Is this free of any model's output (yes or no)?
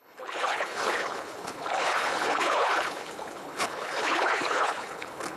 no